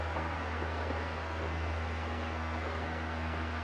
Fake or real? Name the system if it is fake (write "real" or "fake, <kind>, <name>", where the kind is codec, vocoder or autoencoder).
fake, codec, SNAC